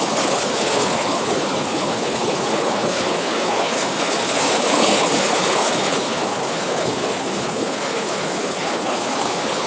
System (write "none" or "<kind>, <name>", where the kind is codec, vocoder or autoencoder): codec, HILCodec